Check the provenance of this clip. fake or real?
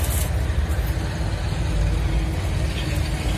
real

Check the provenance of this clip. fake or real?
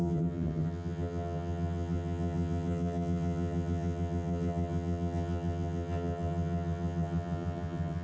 fake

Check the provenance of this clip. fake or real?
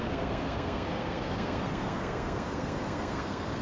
fake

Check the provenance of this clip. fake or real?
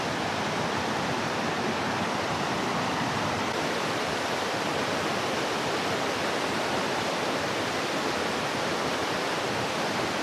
fake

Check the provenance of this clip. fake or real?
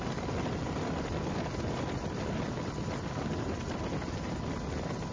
real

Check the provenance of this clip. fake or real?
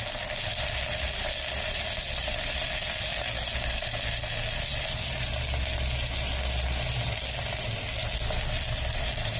real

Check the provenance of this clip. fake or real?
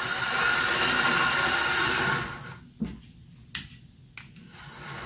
real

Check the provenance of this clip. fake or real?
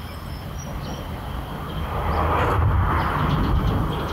real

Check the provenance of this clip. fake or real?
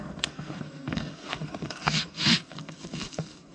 fake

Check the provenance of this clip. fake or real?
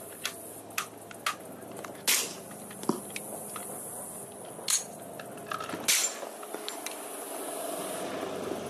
real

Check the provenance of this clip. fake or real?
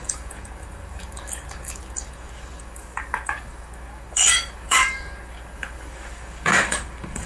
fake